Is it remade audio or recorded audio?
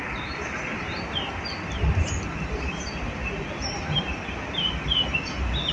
recorded